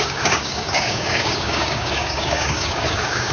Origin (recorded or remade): remade